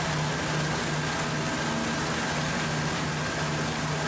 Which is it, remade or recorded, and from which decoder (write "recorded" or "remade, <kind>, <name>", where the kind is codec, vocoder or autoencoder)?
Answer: recorded